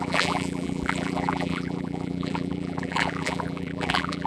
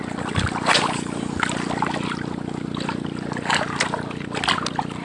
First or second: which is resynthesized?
first